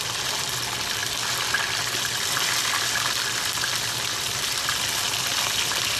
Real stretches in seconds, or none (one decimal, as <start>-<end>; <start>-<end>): 0.0-6.0